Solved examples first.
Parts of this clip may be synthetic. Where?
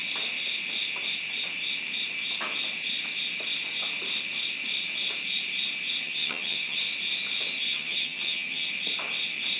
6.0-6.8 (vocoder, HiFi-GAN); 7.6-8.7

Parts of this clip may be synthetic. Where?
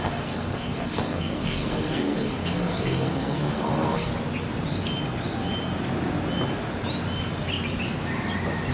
0.0-4.1 (codec, SNAC)